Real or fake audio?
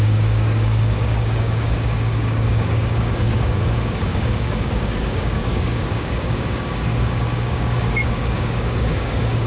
fake